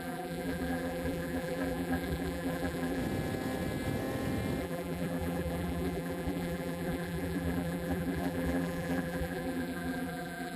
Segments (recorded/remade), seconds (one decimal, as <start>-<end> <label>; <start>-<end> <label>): 0.0-3.0 remade; 3.0-4.6 recorded; 4.6-10.6 remade